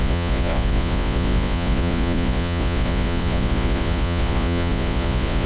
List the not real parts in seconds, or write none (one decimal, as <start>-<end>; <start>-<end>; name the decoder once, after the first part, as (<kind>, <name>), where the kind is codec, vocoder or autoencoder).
0.0-5.5 (vocoder, Vocos)

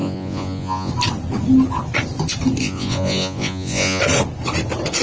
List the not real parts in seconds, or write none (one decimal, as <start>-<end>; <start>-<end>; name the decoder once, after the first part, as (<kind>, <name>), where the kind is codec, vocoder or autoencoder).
0.0-0.9 (vocoder, Vocos); 2.6-4.0

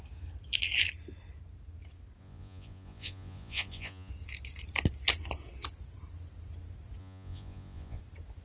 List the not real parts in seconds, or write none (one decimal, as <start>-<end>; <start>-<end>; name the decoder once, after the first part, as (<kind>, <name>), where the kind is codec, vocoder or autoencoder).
2.2-4.1 (vocoder, Vocos); 7.0-8.0

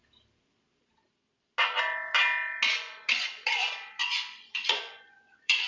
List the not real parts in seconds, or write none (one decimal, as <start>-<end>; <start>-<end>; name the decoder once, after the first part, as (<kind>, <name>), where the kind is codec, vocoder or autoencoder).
2.7-5.7 (vocoder, Vocos)

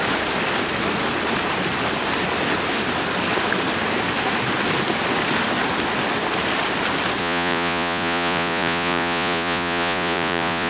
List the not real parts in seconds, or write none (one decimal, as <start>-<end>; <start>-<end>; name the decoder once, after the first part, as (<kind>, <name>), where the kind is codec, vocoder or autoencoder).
7.2-10.7 (vocoder, Vocos)

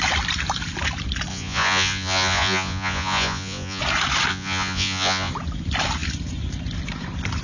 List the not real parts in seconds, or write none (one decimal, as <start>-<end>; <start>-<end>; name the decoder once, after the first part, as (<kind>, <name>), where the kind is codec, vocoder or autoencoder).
1.3-3.8 (vocoder, Vocos); 4.3-5.3